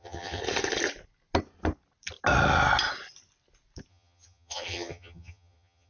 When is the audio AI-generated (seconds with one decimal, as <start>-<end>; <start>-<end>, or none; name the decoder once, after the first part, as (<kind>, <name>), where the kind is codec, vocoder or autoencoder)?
0.0-0.4 (vocoder, HiFi-GAN); 3.9-5.9